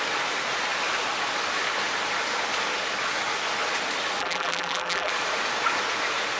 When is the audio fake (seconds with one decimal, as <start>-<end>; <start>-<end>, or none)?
4.2-5.1